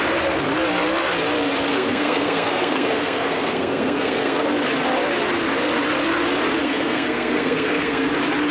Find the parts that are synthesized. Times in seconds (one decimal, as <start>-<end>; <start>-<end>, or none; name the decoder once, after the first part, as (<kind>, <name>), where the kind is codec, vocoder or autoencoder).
1.7-4.5 (codec, SNAC); 6.6-8.1